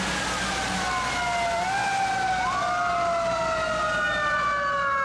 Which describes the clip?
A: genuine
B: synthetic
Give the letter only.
A